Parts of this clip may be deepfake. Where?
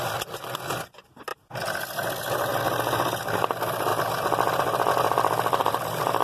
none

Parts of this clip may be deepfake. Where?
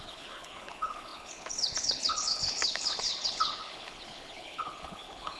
0.0-5.4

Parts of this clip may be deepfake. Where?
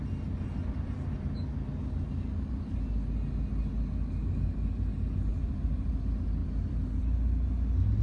5.3-6.0; 6.4-7.0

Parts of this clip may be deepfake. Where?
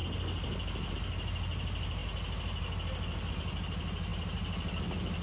none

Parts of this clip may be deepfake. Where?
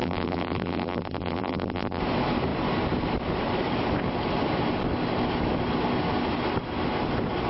0.0-2.0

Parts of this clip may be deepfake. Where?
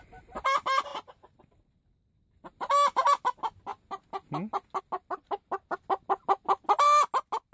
none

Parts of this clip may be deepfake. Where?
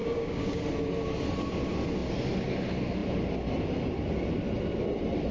0.0-0.6